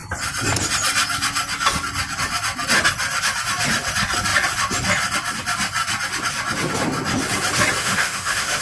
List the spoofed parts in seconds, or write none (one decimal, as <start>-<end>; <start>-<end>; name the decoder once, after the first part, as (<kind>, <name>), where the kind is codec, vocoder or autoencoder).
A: 7.8-8.6 (autoencoder, DAC-VAE)